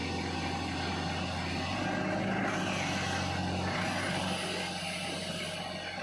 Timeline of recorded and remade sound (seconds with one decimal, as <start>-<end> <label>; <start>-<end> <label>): 0.0-6.0 recorded